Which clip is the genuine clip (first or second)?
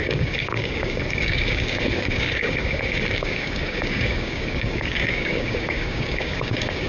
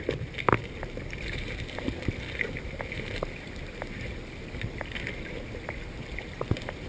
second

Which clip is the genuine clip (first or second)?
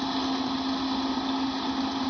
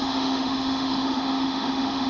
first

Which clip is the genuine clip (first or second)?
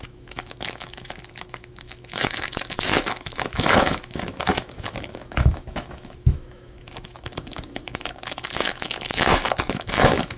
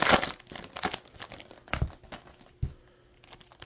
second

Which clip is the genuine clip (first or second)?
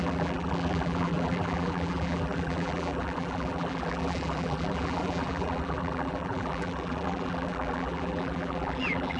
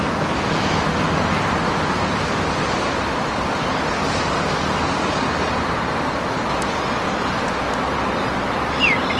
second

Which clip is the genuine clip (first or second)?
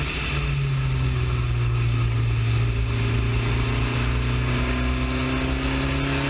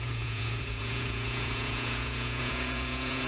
first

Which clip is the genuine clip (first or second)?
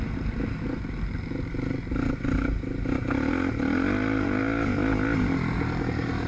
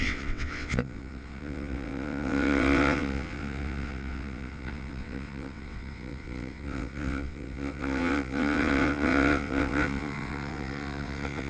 first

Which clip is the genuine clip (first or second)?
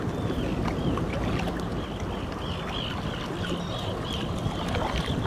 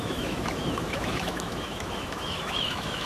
first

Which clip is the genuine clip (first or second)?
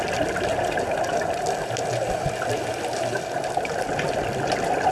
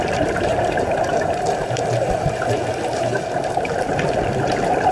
first